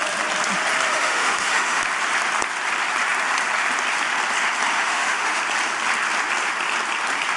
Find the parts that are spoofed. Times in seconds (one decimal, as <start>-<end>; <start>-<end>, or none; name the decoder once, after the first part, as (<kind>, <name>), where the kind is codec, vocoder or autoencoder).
0.9-1.8 (autoencoder, DAC-VAE); 4.7-5.4